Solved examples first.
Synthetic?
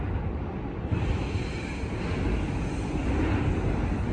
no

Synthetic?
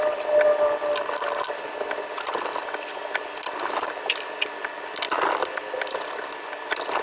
no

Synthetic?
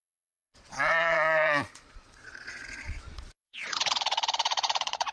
yes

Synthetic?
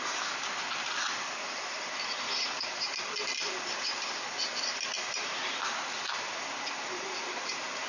no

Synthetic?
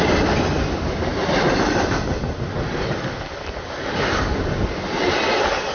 no